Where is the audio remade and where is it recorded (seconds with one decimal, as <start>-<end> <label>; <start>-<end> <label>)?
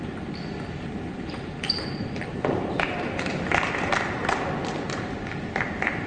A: 0.0-1.1 recorded; 1.1-3.2 remade; 3.2-6.1 recorded